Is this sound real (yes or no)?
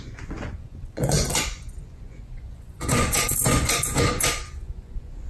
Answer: no